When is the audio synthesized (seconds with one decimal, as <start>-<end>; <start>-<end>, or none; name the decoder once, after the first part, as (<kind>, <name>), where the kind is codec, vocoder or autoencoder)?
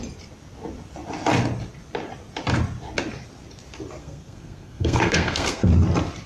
4.0-5.7 (codec, SNAC)